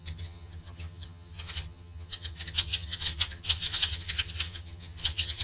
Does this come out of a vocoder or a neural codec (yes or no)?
yes